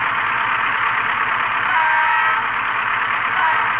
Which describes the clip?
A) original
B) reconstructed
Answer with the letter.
A